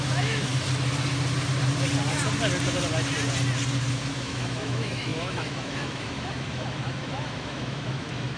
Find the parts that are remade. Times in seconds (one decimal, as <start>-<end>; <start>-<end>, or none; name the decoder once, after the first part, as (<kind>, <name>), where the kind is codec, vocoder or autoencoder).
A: 0.0-0.5 (autoencoder, DAC-VAE); 3.9-8.4